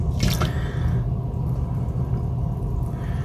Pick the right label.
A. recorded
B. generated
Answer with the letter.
A